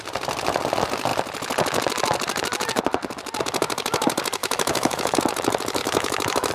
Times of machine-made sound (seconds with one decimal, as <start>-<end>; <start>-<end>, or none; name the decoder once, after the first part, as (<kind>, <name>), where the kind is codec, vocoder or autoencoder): 4.4-5.2 (autoencoder, DAC-VAE); 5.8-6.5